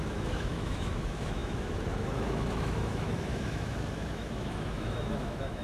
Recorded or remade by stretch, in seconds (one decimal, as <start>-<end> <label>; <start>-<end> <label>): 0.0-5.6 remade